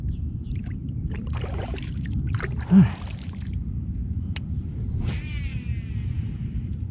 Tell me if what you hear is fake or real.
fake